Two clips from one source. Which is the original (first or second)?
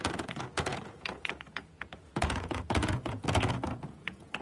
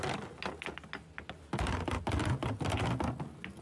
second